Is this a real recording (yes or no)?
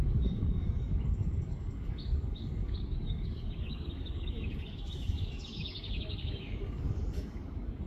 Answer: no